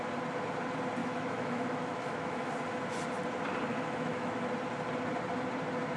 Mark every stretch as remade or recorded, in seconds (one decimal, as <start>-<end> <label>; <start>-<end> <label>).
0.0-1.0 recorded; 1.0-2.5 remade; 2.5-3.7 recorded; 3.7-4.5 remade; 4.5-6.0 recorded